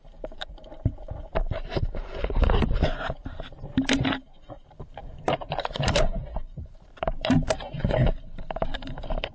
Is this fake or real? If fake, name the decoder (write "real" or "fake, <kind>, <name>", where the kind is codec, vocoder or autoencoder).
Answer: fake, vocoder, BigVGAN v2